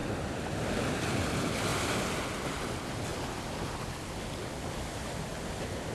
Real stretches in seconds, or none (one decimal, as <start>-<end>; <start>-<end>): 0.0-5.9